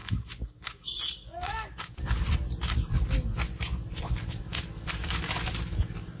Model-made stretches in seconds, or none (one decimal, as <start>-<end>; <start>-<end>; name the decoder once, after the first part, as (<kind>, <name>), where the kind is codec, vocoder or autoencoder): 0.0-2.0 (codec, DAC)